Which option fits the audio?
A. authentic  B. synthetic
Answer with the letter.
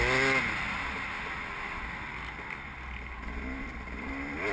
A